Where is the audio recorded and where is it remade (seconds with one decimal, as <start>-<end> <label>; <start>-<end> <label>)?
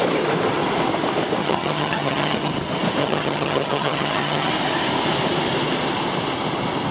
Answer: 0.0-1.4 recorded; 1.4-2.5 remade; 2.5-3.0 recorded; 3.0-4.5 remade; 4.5-6.9 recorded